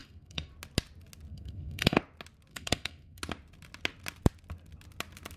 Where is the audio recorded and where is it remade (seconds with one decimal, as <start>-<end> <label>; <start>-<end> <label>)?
0.0-0.5 remade; 0.5-1.3 recorded; 1.3-2.0 remade; 2.0-2.5 recorded; 2.5-3.2 remade; 3.2-5.4 recorded